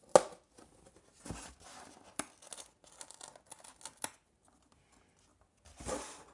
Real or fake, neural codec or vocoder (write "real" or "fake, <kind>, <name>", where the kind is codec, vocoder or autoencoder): real